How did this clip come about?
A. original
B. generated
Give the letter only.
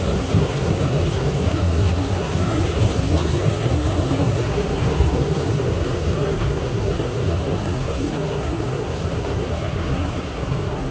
B